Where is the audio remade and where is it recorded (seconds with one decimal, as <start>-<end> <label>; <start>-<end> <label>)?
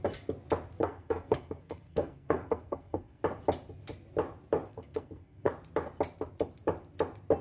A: 0.0-0.8 recorded; 0.8-3.2 remade; 3.2-4.7 recorded; 4.7-5.5 remade; 5.5-7.4 recorded